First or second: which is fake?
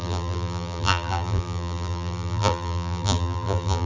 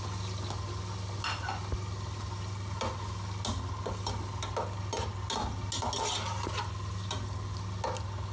first